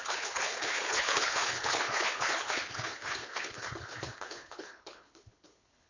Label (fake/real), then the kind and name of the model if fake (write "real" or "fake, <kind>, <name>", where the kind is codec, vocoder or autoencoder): fake, codec, HILCodec